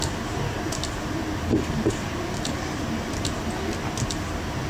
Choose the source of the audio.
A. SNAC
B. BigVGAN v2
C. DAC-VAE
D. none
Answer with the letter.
D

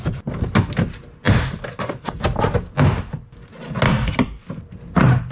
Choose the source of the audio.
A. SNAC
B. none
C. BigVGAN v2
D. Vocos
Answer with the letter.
B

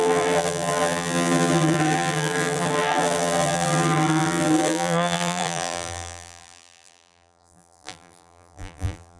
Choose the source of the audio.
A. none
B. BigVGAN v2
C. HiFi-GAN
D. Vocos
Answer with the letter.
B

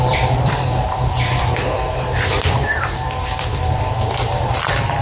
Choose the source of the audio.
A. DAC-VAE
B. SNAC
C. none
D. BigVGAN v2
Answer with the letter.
D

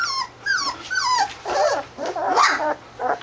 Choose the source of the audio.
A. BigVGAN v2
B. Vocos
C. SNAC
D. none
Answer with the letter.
A